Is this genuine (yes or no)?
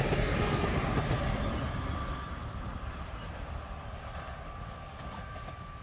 yes